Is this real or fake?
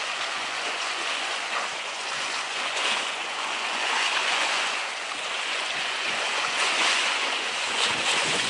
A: fake